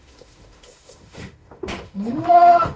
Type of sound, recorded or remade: remade